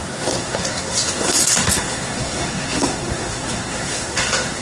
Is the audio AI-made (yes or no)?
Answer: yes